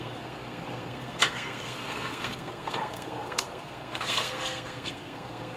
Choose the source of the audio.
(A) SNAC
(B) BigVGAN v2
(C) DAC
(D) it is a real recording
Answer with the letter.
A